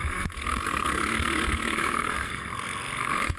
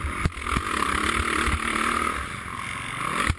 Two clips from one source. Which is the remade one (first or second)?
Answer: first